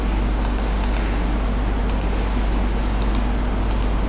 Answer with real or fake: real